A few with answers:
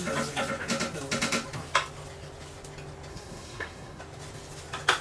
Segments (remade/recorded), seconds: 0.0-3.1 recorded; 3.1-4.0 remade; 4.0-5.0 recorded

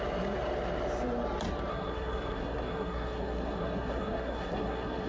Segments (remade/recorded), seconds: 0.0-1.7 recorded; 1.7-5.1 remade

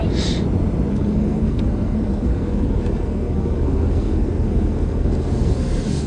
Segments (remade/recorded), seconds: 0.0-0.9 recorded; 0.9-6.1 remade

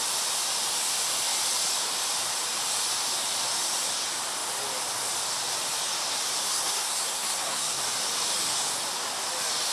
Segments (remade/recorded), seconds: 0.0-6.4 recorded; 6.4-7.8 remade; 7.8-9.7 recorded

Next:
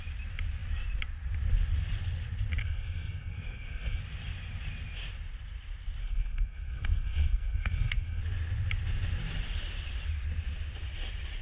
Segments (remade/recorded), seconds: 0.0-2.6 recorded; 2.6-4.0 remade; 4.0-6.0 recorded; 6.0-8.2 remade; 8.2-11.4 recorded